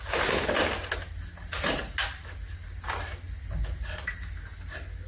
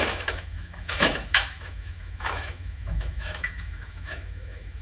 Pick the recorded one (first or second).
first